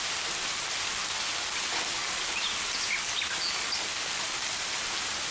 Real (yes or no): yes